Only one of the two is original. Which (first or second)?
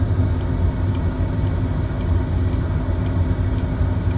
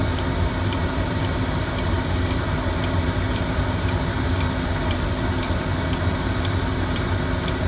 first